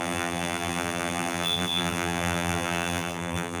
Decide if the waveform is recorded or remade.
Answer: remade